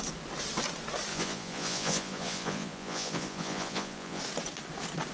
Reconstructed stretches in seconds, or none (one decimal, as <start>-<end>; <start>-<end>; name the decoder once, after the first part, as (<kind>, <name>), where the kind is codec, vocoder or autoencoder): 1.1-4.2 (vocoder, Vocos)